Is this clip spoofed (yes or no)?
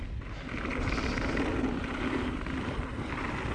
no